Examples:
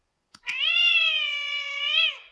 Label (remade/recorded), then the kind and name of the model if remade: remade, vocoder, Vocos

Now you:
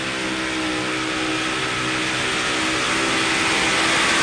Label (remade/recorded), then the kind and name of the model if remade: recorded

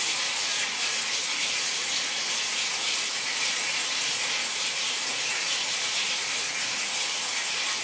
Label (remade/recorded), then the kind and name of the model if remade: remade, vocoder, Vocos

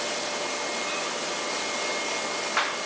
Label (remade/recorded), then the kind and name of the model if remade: recorded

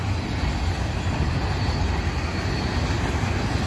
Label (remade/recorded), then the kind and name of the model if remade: recorded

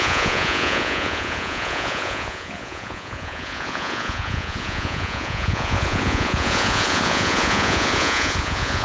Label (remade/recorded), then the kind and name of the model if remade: remade, vocoder, Vocos